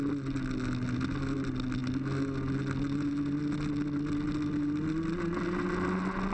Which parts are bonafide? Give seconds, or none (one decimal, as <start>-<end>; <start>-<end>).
0.0-6.3